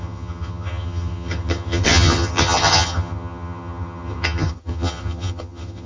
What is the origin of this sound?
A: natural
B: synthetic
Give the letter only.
B